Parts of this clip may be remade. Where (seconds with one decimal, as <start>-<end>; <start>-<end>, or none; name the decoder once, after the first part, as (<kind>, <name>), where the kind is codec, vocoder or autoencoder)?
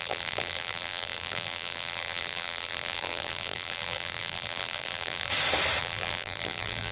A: 0.0-5.3 (vocoder, BigVGAN v2); 5.8-6.9